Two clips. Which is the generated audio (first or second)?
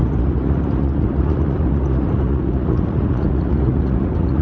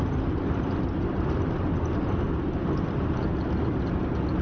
first